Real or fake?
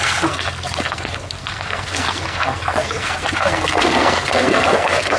fake